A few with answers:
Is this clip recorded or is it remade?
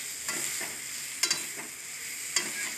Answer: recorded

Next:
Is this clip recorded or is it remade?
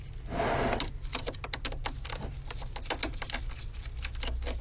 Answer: recorded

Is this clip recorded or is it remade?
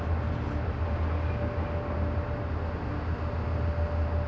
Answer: recorded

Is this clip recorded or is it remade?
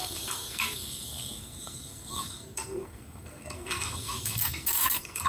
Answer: remade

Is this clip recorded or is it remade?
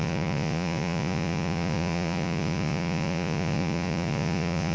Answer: remade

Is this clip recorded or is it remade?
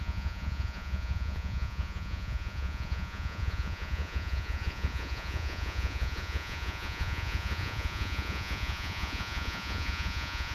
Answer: remade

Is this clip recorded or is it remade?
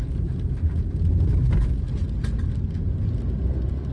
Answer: recorded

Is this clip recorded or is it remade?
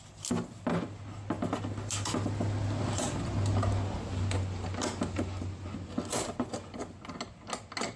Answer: recorded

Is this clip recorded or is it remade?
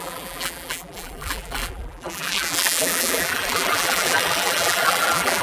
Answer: remade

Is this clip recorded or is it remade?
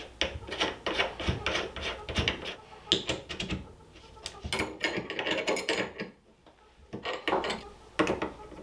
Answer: recorded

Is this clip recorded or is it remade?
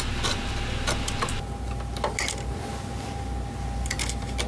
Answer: recorded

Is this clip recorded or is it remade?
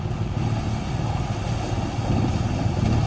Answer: recorded